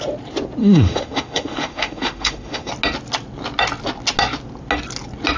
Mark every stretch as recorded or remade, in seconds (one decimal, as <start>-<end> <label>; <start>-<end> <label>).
0.0-0.6 recorded; 0.6-2.7 remade; 2.7-5.4 recorded